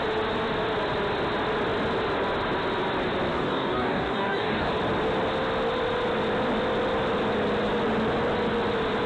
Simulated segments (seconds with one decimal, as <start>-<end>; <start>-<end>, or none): 3.3-4.7